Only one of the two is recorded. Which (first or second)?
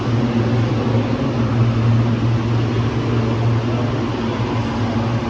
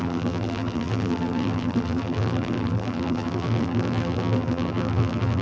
first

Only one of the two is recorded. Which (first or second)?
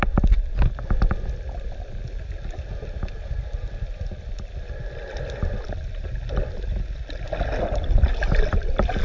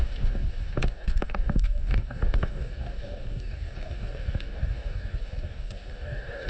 first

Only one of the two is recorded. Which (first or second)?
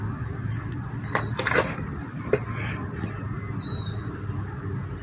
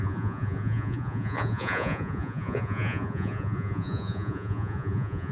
first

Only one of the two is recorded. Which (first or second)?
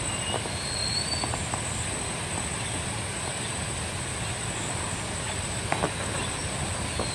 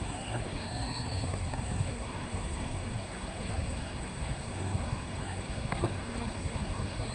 first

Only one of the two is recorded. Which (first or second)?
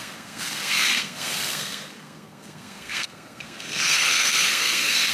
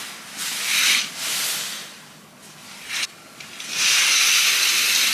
second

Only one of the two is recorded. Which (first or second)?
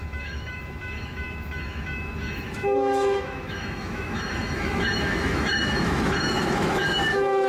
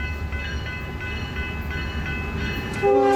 second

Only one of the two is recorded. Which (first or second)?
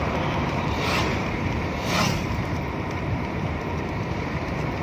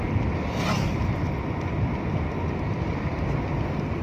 second